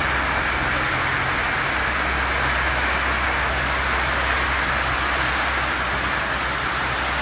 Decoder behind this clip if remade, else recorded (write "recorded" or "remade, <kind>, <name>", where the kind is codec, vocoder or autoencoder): recorded